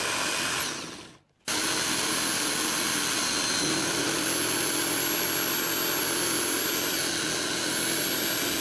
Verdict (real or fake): real